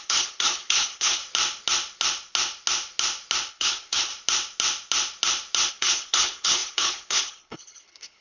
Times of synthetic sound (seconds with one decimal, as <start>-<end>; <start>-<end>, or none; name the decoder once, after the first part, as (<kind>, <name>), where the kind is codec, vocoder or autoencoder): 0.0-1.2 (codec, HILCodec); 3.5-4.1; 5.7-8.2